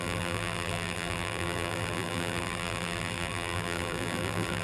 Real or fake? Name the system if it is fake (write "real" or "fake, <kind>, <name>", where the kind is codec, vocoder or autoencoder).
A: fake, vocoder, BigVGAN v2